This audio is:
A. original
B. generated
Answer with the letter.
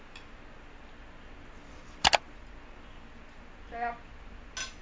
A